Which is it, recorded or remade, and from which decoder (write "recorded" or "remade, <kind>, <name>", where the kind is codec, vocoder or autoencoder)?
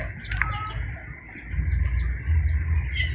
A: recorded